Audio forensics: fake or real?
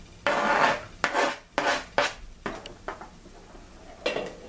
real